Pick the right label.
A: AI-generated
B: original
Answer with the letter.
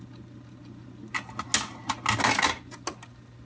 B